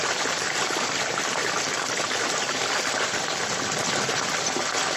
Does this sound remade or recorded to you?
recorded